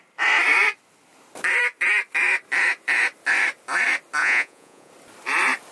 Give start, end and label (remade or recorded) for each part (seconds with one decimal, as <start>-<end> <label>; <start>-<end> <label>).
0.0-4.2 recorded; 4.2-4.9 remade; 4.9-5.7 recorded

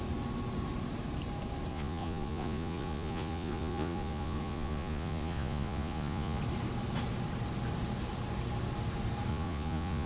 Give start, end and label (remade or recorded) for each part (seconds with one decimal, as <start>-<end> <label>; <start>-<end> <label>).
0.0-1.7 recorded; 1.7-6.4 remade; 6.4-9.3 recorded; 9.3-10.1 remade

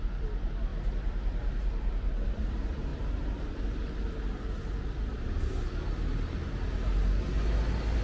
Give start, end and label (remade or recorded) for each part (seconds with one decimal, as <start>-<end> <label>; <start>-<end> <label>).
0.0-8.0 recorded

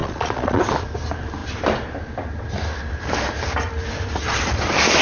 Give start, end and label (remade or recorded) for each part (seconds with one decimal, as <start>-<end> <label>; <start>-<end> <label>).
0.0-0.6 remade; 0.6-5.0 recorded